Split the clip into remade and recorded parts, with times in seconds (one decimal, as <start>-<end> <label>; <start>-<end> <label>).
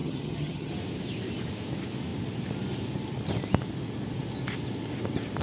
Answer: 0.0-0.7 remade; 0.7-5.4 recorded